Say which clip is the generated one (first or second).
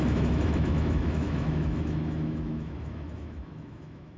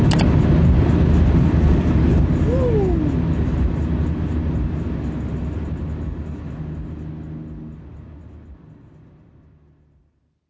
first